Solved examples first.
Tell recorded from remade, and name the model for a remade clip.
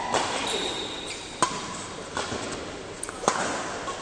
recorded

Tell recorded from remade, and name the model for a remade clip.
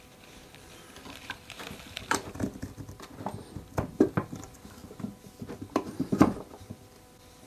remade, vocoder, BigVGAN v2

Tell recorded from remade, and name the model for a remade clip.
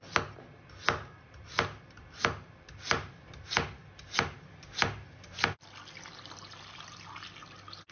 recorded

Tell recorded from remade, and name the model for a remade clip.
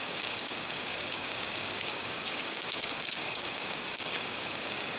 remade, codec, DAC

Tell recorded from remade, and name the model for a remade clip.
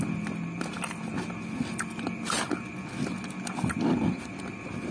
recorded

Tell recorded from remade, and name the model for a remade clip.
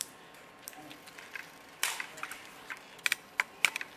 recorded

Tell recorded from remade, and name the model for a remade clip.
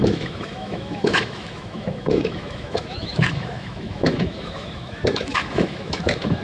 remade, autoencoder, DAC-VAE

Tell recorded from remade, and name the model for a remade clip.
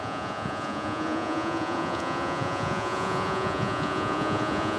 remade, vocoder, Vocos